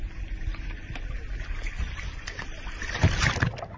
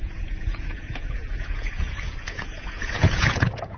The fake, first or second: second